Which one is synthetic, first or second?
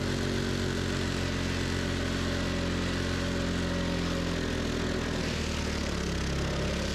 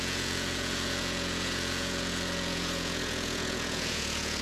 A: second